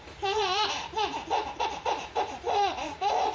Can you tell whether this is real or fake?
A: fake